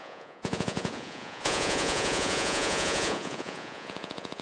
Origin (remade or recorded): remade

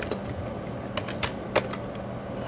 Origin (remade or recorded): recorded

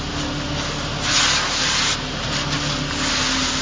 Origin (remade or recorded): recorded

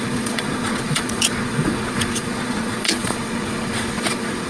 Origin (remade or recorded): remade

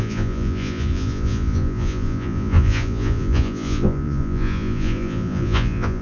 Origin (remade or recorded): remade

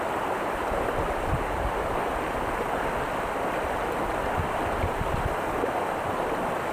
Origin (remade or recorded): recorded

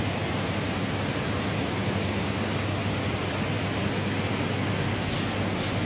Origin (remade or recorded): recorded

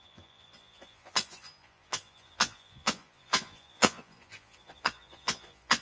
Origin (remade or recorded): remade